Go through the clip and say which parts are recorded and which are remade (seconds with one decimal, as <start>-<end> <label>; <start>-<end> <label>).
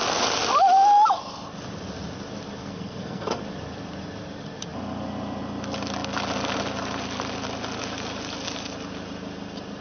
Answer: 0.0-2.6 recorded; 2.6-3.4 remade; 3.4-9.8 recorded